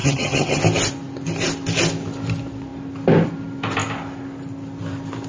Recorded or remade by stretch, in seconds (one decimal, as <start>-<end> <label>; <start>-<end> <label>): 0.0-0.6 remade; 0.6-5.3 recorded